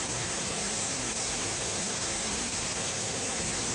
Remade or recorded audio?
remade